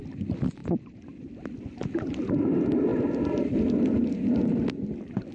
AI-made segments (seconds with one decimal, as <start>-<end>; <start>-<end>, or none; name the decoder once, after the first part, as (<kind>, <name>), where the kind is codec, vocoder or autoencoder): none